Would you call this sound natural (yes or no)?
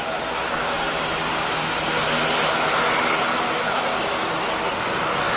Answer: yes